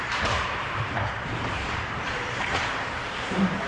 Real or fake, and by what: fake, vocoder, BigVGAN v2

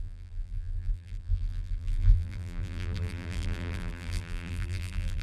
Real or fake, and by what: fake, vocoder, BigVGAN v2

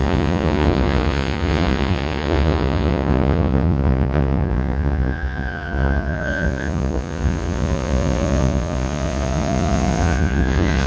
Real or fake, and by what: fake, vocoder, Vocos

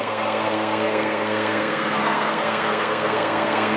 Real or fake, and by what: fake, codec, SNAC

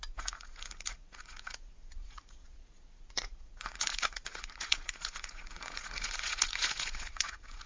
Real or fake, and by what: fake, vocoder, Vocos